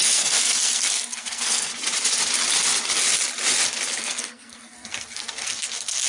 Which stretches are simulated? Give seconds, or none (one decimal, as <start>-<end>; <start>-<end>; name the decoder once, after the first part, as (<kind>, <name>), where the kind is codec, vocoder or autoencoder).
0.0-1.7 (codec, SNAC); 4.0-6.1